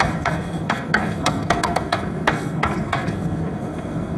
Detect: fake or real fake